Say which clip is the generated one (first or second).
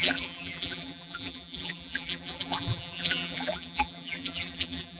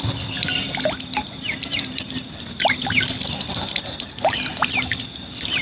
first